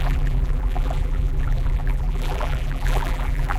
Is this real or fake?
fake